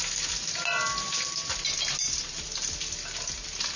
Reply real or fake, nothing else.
real